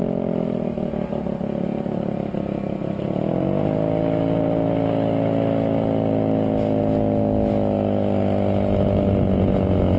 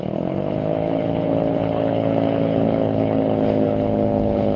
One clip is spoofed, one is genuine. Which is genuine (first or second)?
first